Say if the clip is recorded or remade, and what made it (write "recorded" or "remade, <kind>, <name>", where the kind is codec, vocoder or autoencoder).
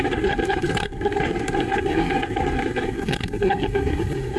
remade, codec, SNAC